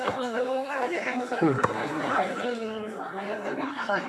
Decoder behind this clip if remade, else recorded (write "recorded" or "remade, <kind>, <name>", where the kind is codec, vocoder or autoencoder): remade, codec, SNAC